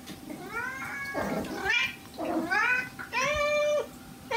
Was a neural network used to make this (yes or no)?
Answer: no